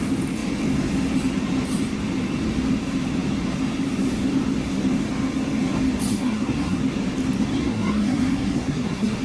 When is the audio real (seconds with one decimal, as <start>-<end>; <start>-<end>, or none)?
0.0-6.1; 6.8-7.5